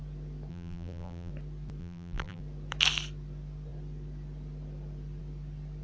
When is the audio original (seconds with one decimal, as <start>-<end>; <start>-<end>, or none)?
0.0-0.5; 1.3-1.8; 2.4-5.8